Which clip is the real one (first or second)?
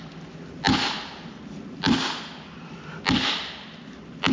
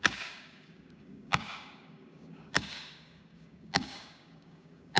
first